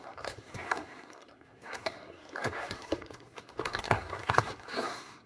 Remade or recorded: remade